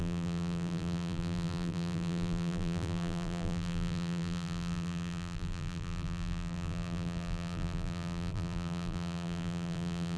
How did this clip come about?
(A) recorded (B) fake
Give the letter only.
B